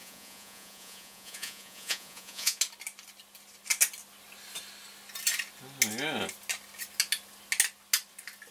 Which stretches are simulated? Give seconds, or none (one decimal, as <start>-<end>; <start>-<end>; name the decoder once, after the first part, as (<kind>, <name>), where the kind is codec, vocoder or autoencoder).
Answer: 0.0-2.6 (vocoder, Vocos)

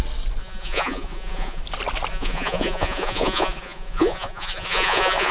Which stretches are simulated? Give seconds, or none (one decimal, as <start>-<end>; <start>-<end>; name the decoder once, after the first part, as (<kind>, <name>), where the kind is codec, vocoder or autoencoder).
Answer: 0.4-1.6 (vocoder, Vocos); 2.1-5.3

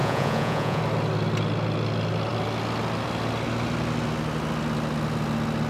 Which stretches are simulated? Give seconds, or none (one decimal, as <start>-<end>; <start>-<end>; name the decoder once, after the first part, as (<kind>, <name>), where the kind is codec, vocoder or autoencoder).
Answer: 0.0-0.8 (vocoder, Vocos)

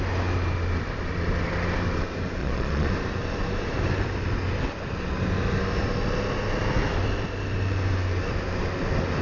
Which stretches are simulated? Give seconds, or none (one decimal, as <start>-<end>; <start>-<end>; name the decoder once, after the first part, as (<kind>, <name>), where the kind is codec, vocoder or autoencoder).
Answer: 2.4-2.9 (vocoder, Vocos)

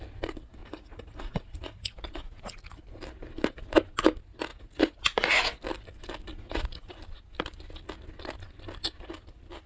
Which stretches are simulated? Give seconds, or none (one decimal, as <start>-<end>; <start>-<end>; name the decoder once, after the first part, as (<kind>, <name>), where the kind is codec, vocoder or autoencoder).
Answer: 0.6-2.8 (vocoder, Vocos); 4.5-5.3; 6.3-7.0

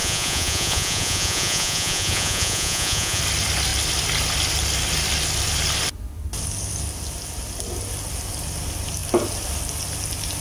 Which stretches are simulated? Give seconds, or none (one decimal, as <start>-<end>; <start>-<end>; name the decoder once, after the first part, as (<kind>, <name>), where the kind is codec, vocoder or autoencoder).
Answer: 0.0-3.2 (vocoder, Vocos)

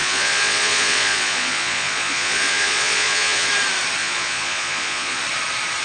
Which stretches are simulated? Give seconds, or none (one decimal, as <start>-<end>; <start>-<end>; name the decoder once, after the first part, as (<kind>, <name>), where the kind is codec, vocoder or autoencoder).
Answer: 0.0-3.5 (vocoder, Vocos); 4.0-5.2